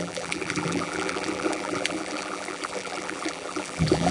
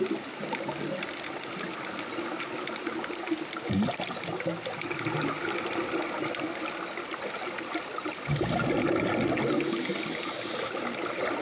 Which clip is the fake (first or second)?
first